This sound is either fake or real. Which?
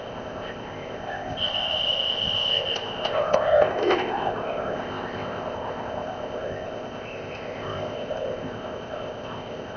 fake